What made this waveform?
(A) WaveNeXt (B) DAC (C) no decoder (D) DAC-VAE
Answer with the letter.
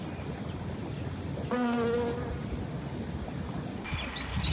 C